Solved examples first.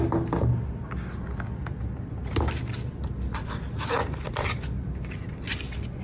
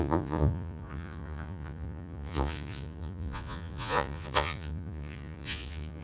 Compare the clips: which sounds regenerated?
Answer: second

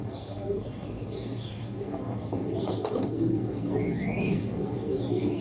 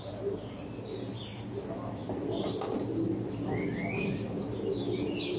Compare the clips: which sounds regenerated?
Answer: first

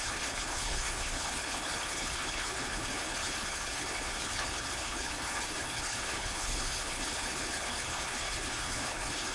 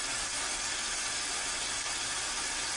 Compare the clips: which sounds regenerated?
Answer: first